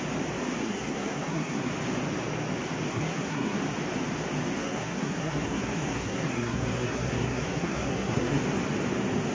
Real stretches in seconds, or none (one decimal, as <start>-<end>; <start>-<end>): 0.0-0.6; 1.7-2.9; 3.6-4.6; 8.4-9.3